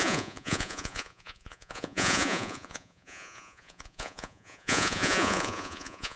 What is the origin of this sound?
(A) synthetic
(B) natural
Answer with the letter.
A